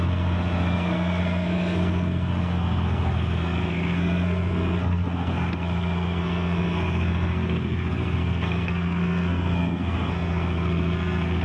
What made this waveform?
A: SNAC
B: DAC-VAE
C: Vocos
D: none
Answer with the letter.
A